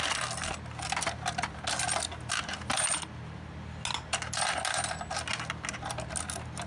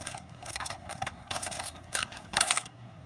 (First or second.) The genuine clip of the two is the first